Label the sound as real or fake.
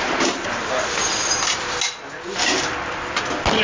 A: real